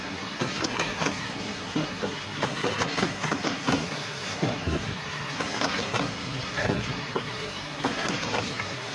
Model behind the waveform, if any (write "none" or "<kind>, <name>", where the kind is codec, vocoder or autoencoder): codec, SNAC